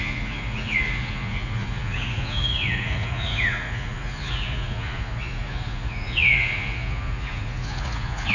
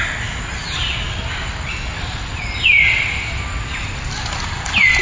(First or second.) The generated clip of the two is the first